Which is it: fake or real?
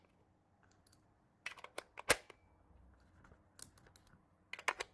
real